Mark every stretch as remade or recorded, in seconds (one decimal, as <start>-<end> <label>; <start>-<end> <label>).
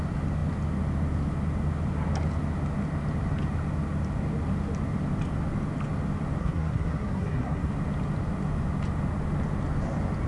0.0-6.4 recorded; 6.4-7.7 remade; 7.7-10.3 recorded